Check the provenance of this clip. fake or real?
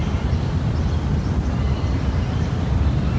real